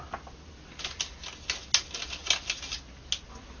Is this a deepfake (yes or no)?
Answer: no